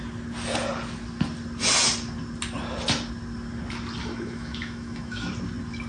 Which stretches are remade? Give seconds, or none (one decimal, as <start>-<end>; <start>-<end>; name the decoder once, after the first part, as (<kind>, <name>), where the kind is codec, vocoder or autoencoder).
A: 4.0-5.3 (autoencoder, DAC-VAE)

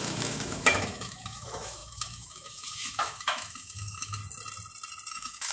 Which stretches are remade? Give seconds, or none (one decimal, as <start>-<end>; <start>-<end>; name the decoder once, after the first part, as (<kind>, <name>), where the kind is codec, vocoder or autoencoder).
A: 0.0-4.2 (autoencoder, DAC-VAE); 5.1-5.5

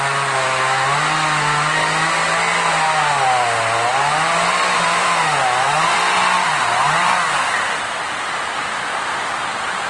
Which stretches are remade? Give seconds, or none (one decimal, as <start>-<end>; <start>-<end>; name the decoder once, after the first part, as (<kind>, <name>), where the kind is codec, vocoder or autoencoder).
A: none